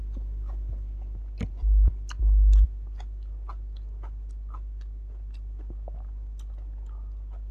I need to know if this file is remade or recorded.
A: recorded